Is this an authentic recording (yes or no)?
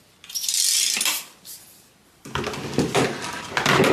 yes